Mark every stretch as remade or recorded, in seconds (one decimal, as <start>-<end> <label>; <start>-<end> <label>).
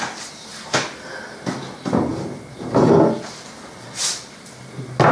0.0-2.1 recorded; 2.1-4.1 remade; 4.1-5.1 recorded